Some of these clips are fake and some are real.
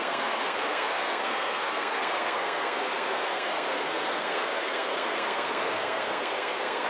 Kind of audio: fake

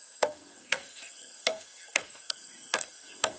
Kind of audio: fake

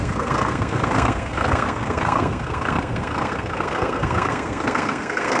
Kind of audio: fake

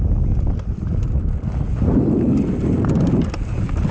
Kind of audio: real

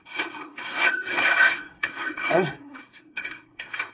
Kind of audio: fake